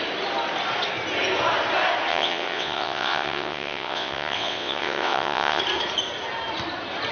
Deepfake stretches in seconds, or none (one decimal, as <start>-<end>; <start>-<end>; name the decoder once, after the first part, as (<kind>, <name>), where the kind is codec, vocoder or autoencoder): 2.1-5.6 (vocoder, WaveNeXt)